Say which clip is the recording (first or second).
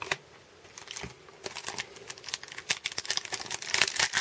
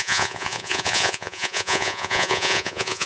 first